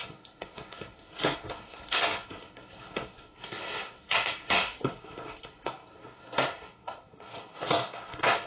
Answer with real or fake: fake